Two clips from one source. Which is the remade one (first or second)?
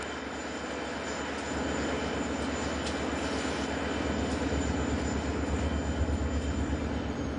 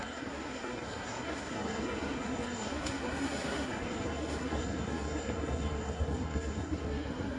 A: second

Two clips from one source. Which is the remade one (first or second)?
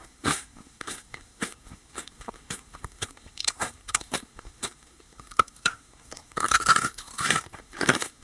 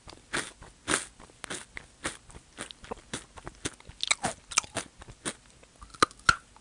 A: first